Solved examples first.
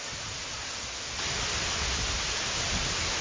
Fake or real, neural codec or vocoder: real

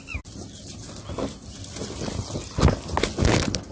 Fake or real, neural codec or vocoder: real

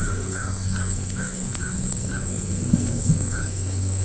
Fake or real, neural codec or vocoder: fake, codec, SNAC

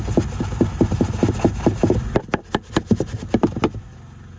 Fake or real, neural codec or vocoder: real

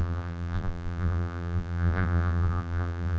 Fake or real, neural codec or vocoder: fake, vocoder, BigVGAN v2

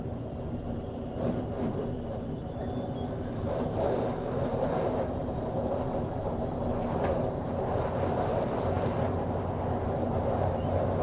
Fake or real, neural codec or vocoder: real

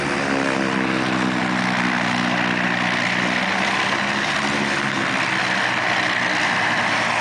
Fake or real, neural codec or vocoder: real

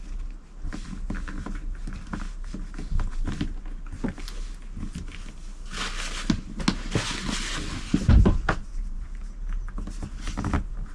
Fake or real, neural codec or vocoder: real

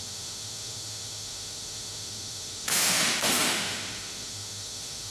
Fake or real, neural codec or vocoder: fake, autoencoder, DAC-VAE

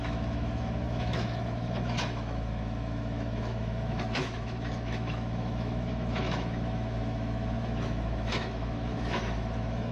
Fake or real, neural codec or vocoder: fake, autoencoder, DAC-VAE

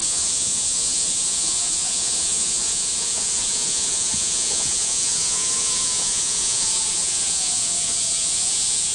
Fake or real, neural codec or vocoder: fake, vocoder, Vocos